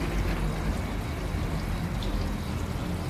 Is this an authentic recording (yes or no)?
yes